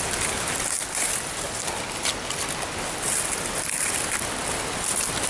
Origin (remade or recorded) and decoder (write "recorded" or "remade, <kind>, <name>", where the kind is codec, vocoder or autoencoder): recorded